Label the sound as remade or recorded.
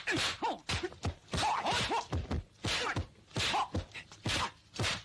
recorded